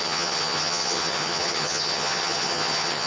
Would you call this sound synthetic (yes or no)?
yes